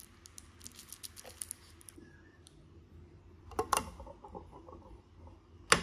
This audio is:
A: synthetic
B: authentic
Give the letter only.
B